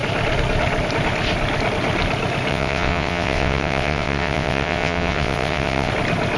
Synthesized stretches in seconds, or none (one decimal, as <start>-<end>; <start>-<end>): 2.5-5.9